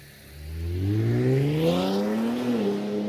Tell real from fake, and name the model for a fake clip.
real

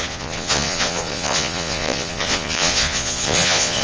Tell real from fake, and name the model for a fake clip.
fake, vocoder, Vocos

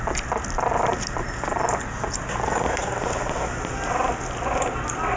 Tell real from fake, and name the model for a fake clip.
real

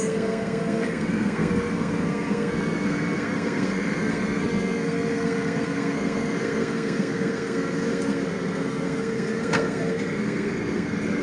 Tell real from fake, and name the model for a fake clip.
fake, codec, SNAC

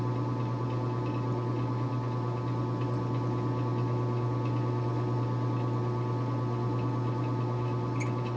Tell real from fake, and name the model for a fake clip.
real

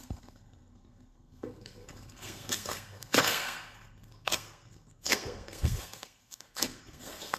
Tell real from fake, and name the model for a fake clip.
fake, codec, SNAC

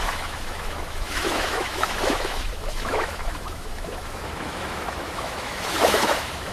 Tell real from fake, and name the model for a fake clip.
fake, autoencoder, DAC-VAE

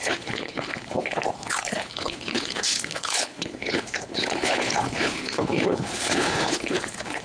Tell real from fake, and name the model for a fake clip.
fake, codec, HILCodec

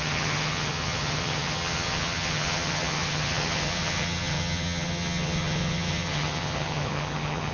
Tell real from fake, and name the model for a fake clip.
fake, vocoder, HiFi-GAN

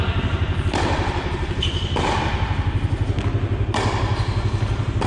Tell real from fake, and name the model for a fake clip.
real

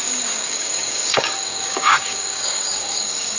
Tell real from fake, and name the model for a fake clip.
fake, codec, DAC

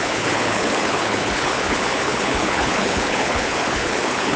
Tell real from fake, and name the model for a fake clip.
fake, codec, HILCodec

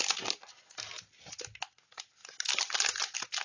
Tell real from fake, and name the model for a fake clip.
real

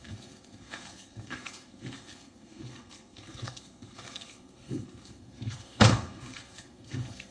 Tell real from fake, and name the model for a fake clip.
fake, codec, SNAC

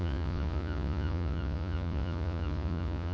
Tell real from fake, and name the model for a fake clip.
fake, vocoder, Vocos